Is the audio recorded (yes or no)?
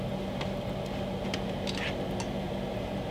yes